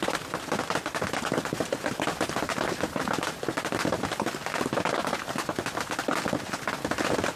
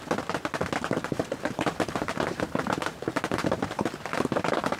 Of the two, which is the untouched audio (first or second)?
first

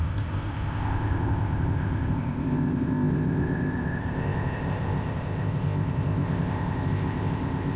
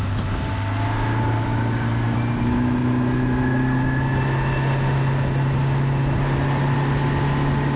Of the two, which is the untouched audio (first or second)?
second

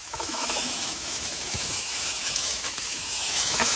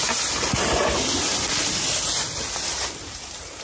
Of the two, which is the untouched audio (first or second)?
second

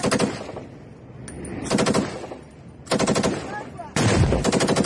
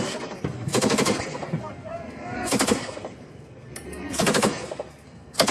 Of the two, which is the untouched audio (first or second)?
first